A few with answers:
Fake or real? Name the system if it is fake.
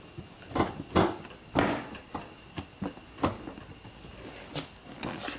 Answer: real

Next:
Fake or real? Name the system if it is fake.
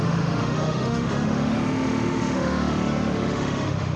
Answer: fake, autoencoder, DAC-VAE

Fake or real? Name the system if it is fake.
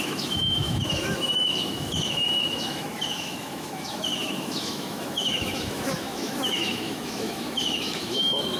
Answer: fake, autoencoder, DAC-VAE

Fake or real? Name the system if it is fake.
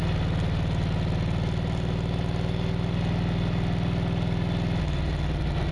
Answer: real